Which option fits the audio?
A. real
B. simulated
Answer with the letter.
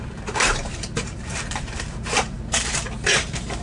B